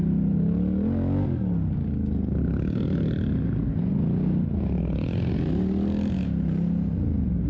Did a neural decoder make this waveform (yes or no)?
no